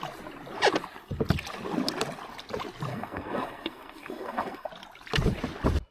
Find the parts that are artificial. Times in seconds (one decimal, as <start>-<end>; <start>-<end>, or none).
2.9-4.7